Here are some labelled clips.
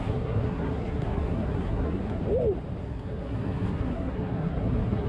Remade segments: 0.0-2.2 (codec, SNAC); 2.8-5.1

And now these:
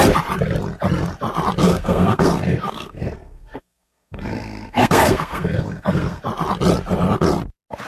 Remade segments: 1.6-6.2 (codec, SNAC)

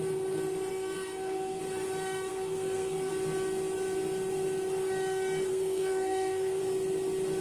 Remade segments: 0.7-1.6 (codec, SNAC); 2.3-3.1; 5.5-6.6

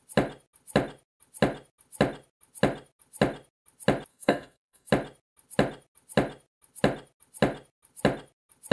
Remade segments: 4.1-4.9 (codec, SNAC)

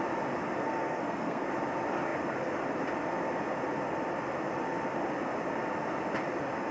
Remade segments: 0.6-1.5 (codec, SNAC)